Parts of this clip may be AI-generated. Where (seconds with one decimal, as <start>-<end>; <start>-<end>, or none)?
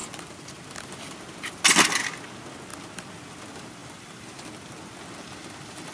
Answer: 3.8-4.5